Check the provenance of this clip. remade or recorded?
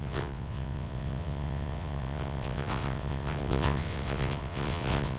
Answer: remade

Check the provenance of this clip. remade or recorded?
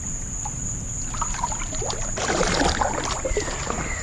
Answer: recorded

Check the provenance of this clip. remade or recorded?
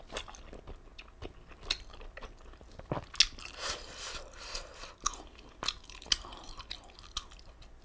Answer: recorded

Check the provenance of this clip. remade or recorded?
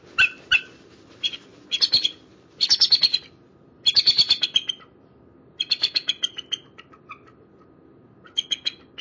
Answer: recorded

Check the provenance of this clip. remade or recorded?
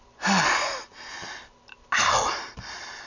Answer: recorded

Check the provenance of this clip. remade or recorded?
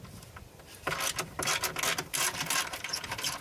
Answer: recorded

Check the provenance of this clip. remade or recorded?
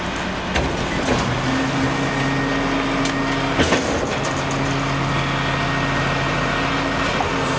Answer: recorded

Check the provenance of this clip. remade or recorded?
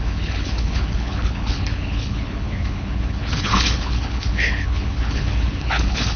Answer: remade